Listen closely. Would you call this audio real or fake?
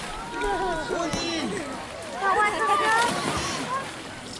real